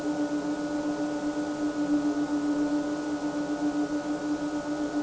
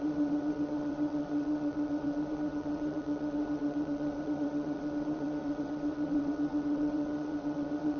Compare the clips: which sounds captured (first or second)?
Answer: first